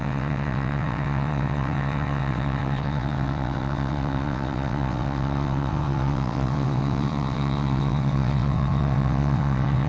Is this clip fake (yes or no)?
yes